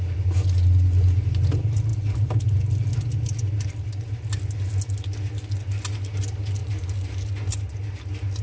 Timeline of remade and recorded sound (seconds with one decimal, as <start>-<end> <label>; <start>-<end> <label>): 0.0-1.9 recorded; 1.9-2.5 remade; 2.5-6.6 recorded; 6.6-7.3 remade; 7.3-8.4 recorded